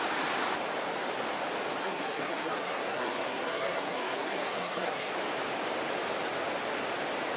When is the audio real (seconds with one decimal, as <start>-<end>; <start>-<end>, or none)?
0.0-1.8; 5.1-7.4